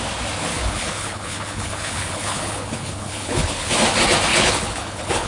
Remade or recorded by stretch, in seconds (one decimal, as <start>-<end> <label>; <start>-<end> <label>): 0.0-0.5 recorded; 0.5-3.7 remade; 3.7-4.3 recorded; 4.3-5.3 remade